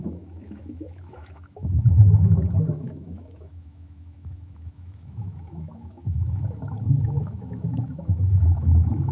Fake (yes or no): yes